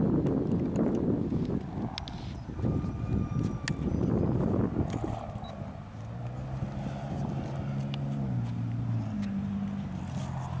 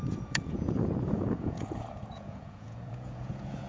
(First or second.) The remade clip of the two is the second